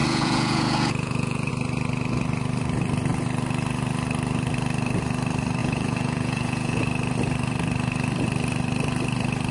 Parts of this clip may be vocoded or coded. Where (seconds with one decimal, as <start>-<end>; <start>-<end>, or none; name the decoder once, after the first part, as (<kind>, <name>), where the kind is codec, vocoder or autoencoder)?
0.0-1.5 (vocoder, Vocos); 5.6-6.8